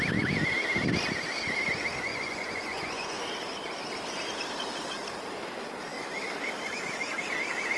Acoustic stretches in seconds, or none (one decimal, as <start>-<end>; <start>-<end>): 0.0-2.1; 3.2-7.8